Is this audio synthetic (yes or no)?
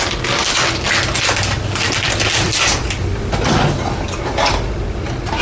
no